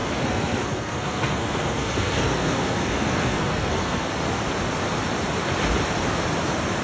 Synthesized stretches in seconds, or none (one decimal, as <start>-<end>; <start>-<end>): 0.0-4.1